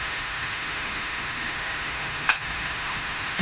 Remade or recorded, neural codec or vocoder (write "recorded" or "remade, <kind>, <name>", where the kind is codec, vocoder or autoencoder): remade, autoencoder, DAC-VAE